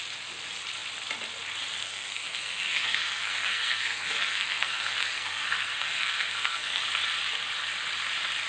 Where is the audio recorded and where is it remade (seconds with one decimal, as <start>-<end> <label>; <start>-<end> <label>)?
0.0-1.8 recorded; 1.8-6.8 remade; 6.8-8.5 recorded

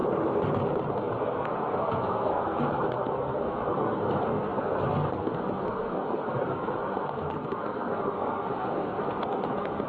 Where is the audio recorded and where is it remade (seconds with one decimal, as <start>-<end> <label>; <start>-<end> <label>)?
0.0-0.9 recorded; 0.9-9.9 remade

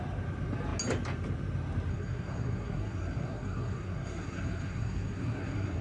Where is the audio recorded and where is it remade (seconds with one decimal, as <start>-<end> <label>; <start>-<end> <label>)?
0.0-1.9 recorded; 1.9-5.8 remade

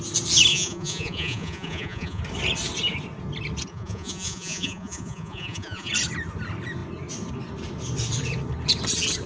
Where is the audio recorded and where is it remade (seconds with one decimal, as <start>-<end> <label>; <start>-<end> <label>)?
0.0-0.5 recorded; 0.5-2.2 remade; 2.2-3.7 recorded; 3.7-5.9 remade; 5.9-9.3 recorded

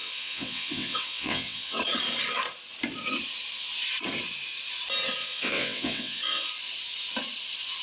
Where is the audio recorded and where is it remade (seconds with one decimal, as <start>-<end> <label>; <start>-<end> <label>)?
0.0-1.8 remade; 1.8-5.2 recorded; 5.2-6.5 remade; 6.5-7.8 recorded

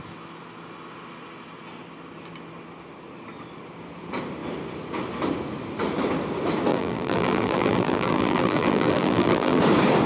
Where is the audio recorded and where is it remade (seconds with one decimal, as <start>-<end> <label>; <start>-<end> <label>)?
0.0-6.7 recorded; 6.7-9.6 remade; 9.6-10.1 recorded

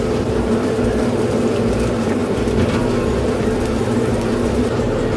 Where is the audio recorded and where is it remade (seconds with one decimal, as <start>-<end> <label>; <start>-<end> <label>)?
0.0-2.2 remade; 2.2-3.8 recorded; 3.8-5.2 remade

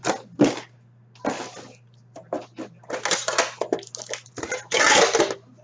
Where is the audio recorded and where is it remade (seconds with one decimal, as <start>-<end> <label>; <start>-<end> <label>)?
0.0-5.6 recorded